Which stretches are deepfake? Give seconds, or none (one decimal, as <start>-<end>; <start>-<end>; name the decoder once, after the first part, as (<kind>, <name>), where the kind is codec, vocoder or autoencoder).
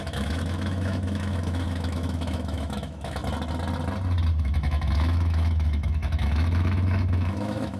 0.0-3.2 (autoencoder, DAC-VAE); 4.4-7.8